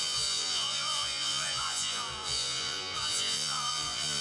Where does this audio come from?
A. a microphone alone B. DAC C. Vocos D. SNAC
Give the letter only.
C